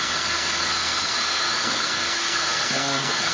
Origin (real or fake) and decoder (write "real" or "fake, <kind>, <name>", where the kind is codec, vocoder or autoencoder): fake, codec, SNAC